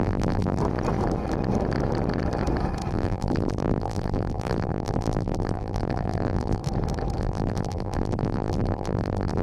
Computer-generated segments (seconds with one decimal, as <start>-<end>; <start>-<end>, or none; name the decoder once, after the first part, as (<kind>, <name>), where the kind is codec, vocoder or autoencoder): 0.0-0.6 (vocoder, BigVGAN v2); 2.9-6.6; 7.2-9.4